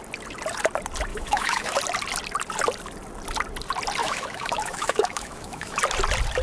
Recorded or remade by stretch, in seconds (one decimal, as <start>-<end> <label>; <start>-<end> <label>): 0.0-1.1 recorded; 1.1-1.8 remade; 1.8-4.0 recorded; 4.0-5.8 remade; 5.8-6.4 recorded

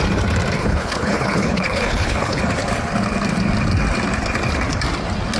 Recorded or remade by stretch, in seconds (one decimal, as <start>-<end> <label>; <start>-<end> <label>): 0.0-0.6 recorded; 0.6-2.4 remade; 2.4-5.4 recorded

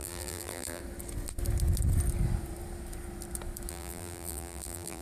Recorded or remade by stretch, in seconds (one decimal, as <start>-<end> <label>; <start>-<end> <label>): 0.0-0.8 remade; 0.8-3.7 recorded; 3.7-5.0 remade

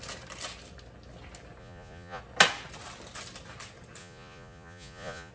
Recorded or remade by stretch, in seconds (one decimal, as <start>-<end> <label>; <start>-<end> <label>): 0.0-1.6 recorded; 1.6-2.2 remade; 2.2-4.0 recorded; 4.0-5.3 remade